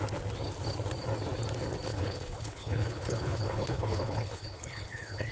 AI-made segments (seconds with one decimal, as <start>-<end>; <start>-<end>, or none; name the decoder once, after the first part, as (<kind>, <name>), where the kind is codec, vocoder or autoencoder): 1.9-5.3 (codec, HILCodec)